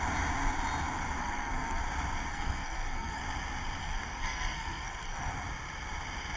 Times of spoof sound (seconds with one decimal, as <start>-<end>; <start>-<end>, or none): 1.2-1.8; 2.3-3.2; 3.8-5.3